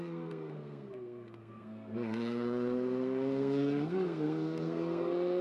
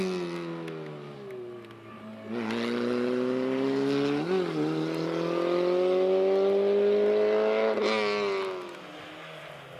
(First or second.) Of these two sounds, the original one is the second